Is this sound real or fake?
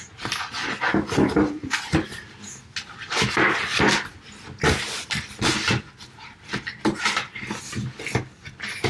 real